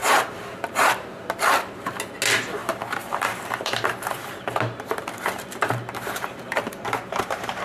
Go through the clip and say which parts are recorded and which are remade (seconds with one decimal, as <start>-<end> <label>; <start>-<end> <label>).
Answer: 0.0-1.1 remade; 1.1-2.6 recorded; 2.6-7.6 remade